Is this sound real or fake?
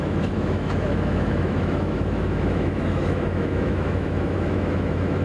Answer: fake